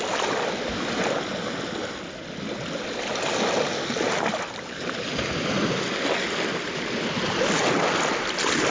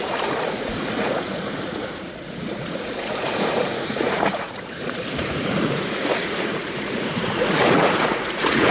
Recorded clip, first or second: first